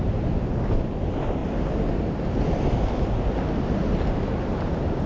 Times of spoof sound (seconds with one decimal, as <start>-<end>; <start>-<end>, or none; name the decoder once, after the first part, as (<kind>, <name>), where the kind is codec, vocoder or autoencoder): none